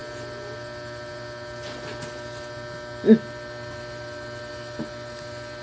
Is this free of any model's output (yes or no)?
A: yes